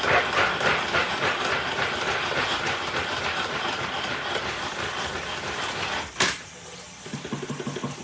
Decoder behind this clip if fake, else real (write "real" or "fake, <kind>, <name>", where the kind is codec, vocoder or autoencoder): real